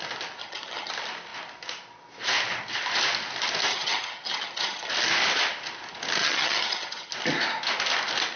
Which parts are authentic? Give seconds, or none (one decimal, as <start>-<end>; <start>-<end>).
0.0-0.4; 0.9-3.7; 4.9-6.2; 7.1-8.4